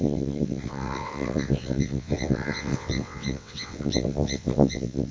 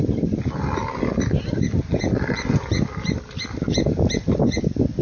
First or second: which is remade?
first